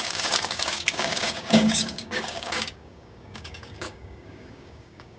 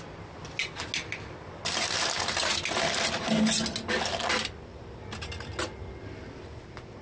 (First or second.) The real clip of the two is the second